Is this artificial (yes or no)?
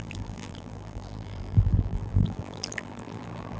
yes